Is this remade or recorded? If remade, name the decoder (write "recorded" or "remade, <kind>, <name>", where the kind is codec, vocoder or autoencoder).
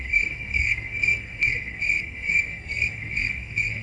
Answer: remade, codec, SNAC